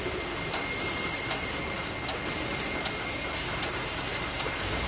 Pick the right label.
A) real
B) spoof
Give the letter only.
A